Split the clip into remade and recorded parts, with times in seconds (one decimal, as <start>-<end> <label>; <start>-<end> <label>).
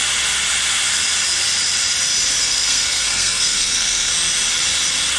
0.0-2.4 recorded; 2.4-4.1 remade; 4.1-5.2 recorded